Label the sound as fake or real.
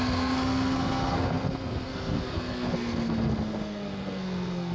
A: fake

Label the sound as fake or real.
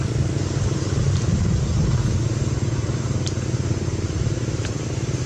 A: real